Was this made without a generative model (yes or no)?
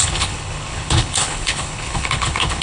no